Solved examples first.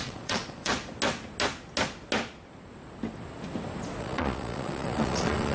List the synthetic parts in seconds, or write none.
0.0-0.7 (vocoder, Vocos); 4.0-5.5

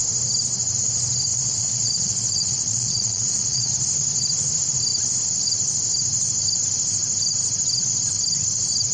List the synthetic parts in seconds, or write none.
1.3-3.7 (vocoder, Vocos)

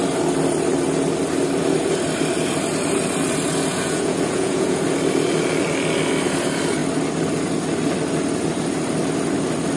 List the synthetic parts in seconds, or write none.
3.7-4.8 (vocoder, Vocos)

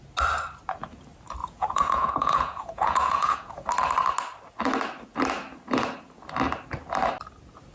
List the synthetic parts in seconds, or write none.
1.4-3.7 (vocoder, Vocos)

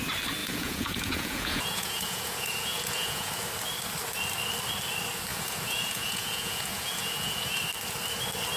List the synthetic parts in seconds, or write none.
0.4-3.3 (vocoder, Vocos); 5.3-7.6